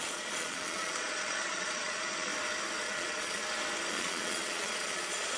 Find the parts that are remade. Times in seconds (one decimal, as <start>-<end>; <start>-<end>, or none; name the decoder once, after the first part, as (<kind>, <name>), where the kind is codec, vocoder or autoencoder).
0.0-2.3 (vocoder, Vocos); 2.8-3.4; 3.9-5.4